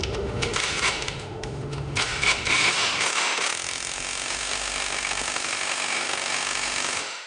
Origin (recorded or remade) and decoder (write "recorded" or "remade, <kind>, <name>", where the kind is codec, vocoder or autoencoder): remade, autoencoder, DAC-VAE